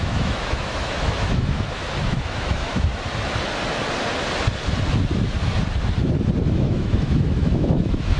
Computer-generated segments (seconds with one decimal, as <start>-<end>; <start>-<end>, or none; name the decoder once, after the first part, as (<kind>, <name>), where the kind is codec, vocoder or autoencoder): 0.0-2.9 (autoencoder, DAC-VAE); 6.5-8.2